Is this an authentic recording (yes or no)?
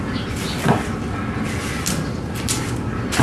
yes